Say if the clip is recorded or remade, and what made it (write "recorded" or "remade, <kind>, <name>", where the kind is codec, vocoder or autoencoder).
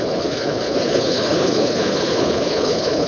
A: remade, codec, HILCodec